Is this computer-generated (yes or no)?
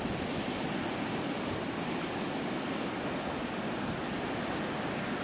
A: no